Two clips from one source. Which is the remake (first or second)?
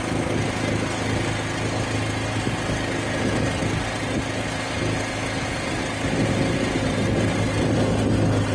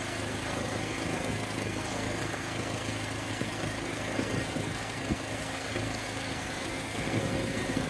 second